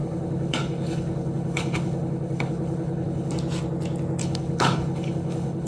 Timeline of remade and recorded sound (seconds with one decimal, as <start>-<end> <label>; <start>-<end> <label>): 0.0-3.3 remade; 3.3-4.2 recorded; 4.2-5.7 remade